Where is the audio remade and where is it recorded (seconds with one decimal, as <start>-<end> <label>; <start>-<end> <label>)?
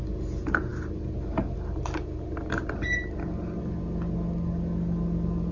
0.0-5.5 recorded